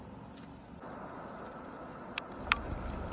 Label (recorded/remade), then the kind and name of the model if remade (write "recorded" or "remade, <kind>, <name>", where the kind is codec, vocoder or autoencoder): recorded